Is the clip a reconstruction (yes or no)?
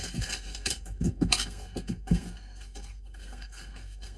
yes